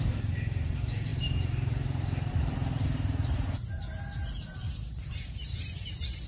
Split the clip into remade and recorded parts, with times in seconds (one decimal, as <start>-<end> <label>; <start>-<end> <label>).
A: 0.0-6.3 remade